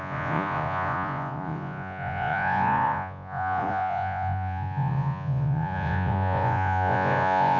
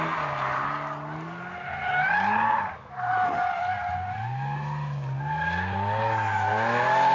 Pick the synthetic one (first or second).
first